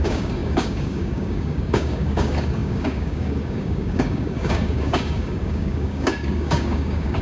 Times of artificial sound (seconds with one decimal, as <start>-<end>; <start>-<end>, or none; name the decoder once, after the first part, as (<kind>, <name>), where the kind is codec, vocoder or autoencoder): 0.0-7.2 (codec, DAC)